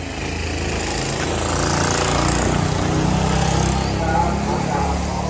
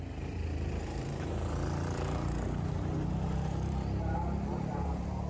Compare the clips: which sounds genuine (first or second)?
first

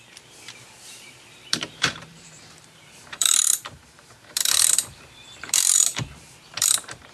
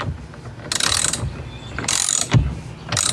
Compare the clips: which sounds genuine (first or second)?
second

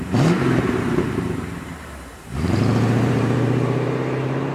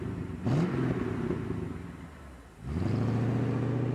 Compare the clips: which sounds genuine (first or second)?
second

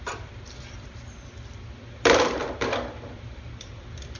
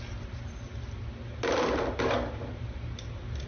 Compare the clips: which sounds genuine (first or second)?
second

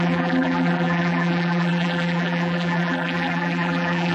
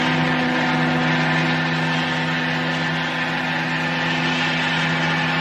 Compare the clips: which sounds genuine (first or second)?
second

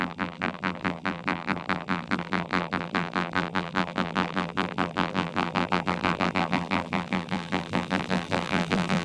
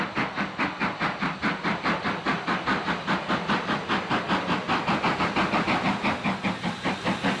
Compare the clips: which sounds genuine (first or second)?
second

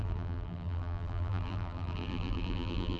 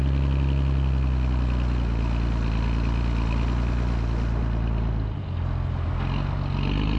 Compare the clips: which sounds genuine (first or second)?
second